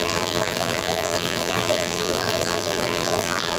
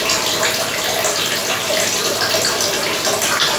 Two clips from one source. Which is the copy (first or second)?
first